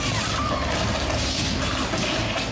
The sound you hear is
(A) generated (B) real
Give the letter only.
B